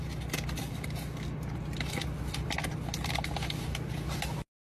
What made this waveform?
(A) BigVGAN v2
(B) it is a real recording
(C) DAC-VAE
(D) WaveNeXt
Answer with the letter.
B